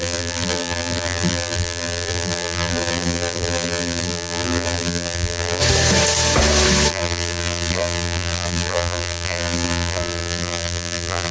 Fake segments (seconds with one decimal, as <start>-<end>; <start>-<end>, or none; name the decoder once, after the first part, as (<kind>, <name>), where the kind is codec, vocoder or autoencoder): 0.0-5.6 (vocoder, BigVGAN v2); 6.9-11.3